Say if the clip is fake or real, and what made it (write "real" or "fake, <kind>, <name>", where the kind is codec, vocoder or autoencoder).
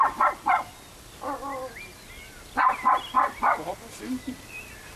real